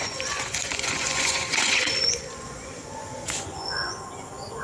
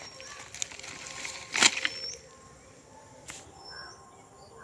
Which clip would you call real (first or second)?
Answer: second